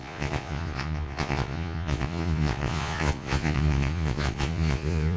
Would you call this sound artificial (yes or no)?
yes